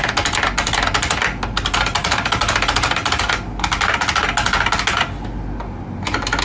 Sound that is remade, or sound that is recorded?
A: recorded